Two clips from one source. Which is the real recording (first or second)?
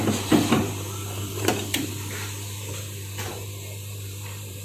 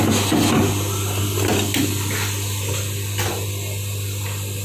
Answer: second